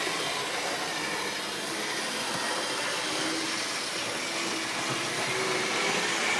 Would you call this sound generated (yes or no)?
no